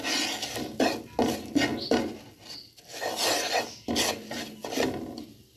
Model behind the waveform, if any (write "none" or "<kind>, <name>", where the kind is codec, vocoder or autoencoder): none